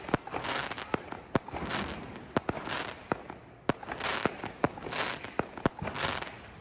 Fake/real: real